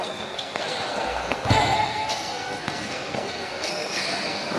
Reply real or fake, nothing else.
fake